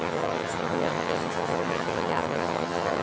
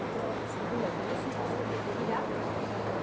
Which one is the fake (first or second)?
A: first